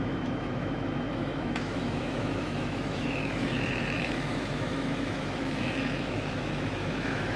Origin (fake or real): fake